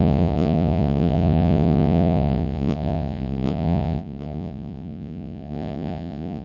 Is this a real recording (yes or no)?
no